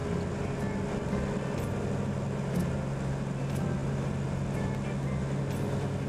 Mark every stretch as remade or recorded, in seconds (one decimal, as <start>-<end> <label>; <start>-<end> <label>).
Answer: 0.0-6.1 recorded

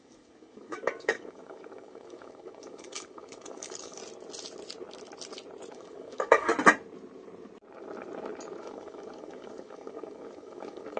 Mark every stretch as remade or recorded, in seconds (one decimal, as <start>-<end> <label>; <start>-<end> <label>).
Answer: 0.0-4.0 remade; 4.0-5.7 recorded; 5.7-6.5 remade; 6.5-8.6 recorded; 8.6-11.0 remade

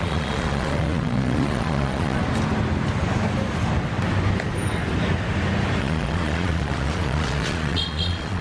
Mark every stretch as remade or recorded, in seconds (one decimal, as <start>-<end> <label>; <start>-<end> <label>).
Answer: 0.0-2.2 remade; 2.2-5.8 recorded; 5.8-8.4 remade